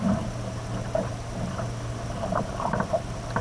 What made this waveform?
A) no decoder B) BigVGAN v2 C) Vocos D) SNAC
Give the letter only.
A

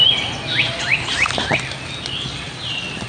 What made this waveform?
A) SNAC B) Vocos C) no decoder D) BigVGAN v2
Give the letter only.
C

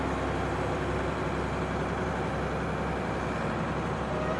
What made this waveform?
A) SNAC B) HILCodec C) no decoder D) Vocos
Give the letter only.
C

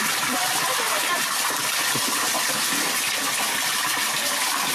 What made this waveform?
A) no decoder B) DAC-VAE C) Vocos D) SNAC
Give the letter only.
A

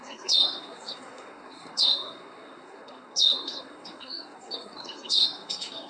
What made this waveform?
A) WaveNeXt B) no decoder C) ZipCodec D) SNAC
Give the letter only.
D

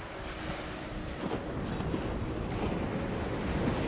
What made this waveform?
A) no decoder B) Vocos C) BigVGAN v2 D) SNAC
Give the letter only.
A